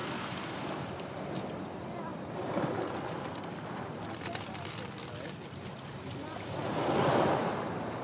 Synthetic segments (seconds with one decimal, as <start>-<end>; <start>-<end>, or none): none